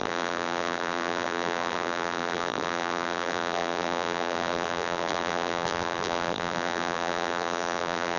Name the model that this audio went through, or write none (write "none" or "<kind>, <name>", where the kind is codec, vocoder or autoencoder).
vocoder, BigVGAN v2